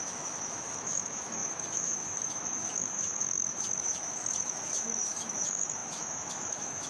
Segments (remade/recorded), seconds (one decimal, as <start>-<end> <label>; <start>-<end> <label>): 0.0-6.9 remade